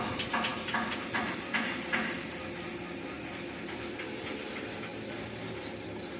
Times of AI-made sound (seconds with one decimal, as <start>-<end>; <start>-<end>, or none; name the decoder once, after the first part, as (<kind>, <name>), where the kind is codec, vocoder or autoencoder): none